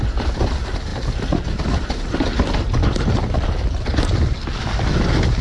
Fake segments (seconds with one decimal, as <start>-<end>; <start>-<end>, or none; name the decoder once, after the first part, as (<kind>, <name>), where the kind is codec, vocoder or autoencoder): none